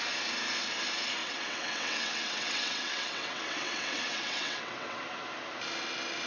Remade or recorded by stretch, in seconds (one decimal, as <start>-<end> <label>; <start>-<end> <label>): 0.0-1.2 recorded; 1.2-5.0 remade; 5.0-6.3 recorded